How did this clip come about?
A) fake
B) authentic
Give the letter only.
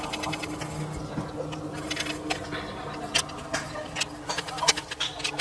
B